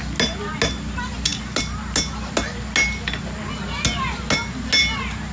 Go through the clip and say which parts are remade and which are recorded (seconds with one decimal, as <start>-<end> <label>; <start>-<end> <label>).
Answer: 0.0-5.3 recorded